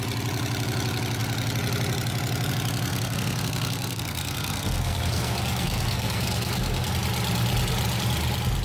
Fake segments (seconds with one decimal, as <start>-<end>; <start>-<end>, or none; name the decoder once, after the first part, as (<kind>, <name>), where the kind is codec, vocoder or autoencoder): 2.9-6.9 (codec, SNAC)